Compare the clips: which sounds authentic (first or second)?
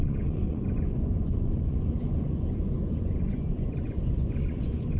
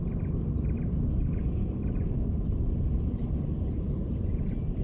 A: second